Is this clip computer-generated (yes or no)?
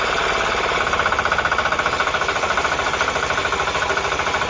no